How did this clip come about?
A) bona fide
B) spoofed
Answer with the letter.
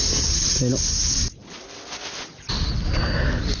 A